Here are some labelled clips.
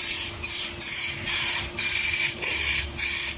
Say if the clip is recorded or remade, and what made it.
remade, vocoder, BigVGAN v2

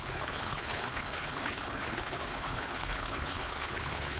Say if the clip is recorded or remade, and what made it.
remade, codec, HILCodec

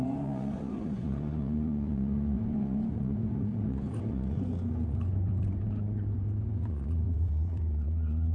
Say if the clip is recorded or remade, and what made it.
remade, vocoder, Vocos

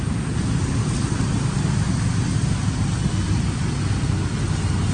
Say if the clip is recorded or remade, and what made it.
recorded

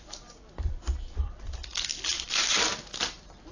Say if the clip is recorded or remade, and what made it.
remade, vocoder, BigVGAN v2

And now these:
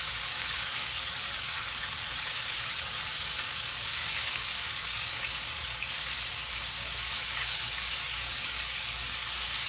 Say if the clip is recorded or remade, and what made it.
remade, codec, DAC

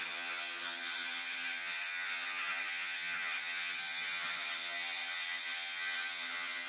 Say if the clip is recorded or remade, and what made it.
remade, vocoder, HiFi-GAN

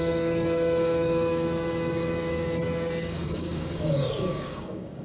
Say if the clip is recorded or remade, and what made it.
remade, codec, DAC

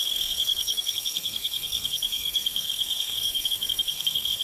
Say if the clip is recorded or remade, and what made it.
remade, codec, SNAC